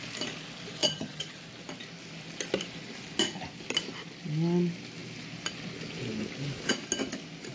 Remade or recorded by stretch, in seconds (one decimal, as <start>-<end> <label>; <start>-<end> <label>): 0.0-0.8 recorded; 0.8-1.4 remade; 1.4-7.5 recorded